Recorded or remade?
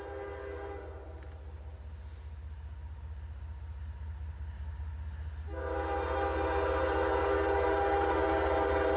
recorded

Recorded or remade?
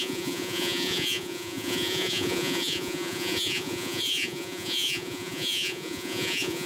remade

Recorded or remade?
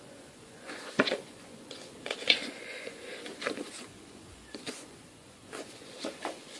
remade